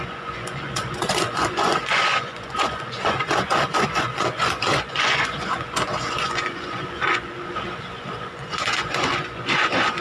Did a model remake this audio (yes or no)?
yes